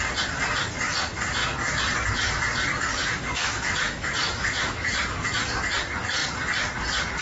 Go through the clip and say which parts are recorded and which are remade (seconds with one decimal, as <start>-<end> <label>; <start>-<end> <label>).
0.0-2.9 recorded; 2.9-5.4 remade; 5.4-7.2 recorded